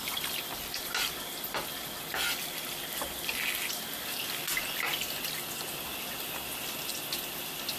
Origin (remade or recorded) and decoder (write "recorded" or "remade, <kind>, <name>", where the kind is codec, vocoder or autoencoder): recorded